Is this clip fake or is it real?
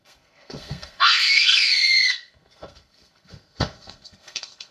fake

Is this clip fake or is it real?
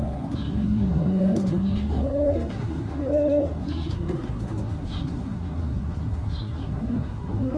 fake